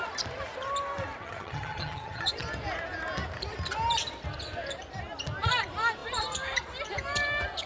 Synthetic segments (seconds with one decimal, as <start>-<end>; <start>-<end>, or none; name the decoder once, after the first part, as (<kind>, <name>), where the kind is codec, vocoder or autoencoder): 1.2-2.3 (vocoder, HiFi-GAN)